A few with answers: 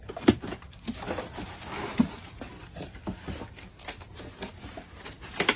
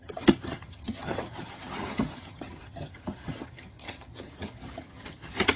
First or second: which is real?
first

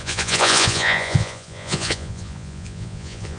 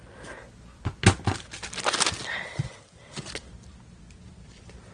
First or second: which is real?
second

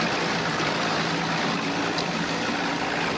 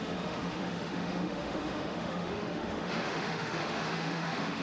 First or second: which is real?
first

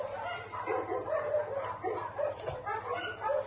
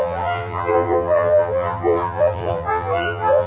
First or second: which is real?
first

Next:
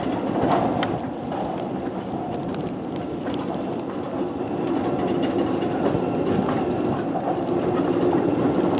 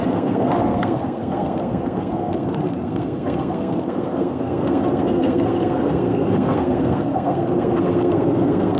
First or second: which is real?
first